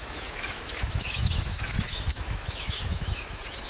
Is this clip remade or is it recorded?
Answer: remade